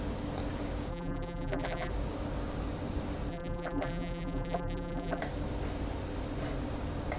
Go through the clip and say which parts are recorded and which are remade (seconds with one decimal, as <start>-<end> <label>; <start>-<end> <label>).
0.0-0.9 recorded; 0.9-1.9 remade; 1.9-3.3 recorded; 3.3-5.2 remade; 5.2-7.2 recorded